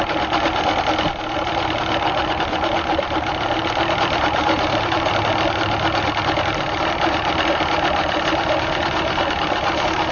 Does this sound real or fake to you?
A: real